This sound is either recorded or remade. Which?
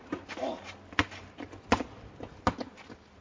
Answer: recorded